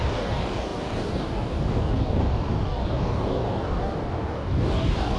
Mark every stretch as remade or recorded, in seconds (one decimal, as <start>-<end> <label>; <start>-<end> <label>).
0.0-5.2 remade